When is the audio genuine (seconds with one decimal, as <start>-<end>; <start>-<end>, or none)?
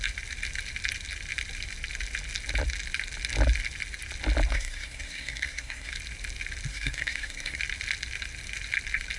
0.0-4.5; 5.9-6.7; 7.6-9.2